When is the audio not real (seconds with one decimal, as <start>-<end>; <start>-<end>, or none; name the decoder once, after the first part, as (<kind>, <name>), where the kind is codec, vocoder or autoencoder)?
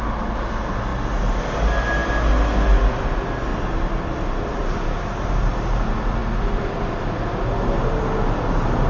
none